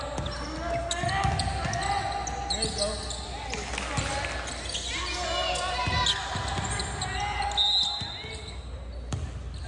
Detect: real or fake real